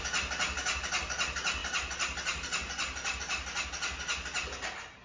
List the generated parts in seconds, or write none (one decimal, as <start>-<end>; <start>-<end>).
none